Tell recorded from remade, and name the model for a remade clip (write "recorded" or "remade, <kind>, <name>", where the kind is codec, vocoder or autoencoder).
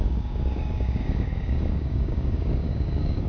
remade, codec, DAC